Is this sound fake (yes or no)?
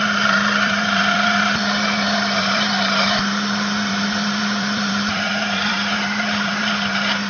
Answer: yes